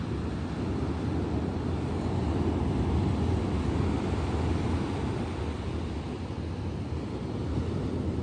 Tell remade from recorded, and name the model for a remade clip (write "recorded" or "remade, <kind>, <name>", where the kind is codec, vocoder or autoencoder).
recorded